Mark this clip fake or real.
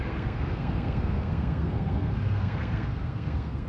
fake